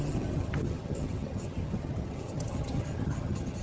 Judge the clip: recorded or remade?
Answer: remade